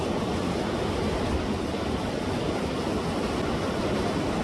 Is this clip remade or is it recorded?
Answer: recorded